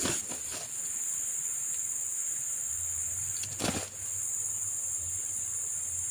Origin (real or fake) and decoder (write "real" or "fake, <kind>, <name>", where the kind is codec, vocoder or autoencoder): real